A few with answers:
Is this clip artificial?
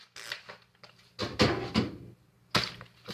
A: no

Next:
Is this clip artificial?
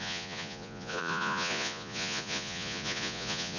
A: yes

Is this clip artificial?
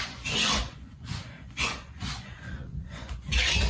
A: yes